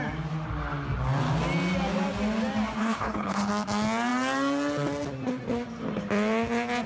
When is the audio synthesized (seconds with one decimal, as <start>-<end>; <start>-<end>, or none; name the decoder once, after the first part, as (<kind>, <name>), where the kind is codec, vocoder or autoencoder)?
2.8-3.5 (codec, HILCodec)